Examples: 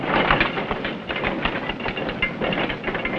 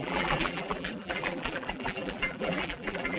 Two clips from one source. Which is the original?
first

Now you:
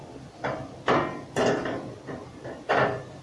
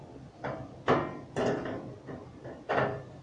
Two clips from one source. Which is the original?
second